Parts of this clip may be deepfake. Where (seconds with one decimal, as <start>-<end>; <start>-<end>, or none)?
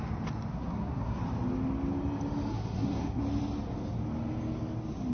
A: 0.5-1.2; 2.5-3.2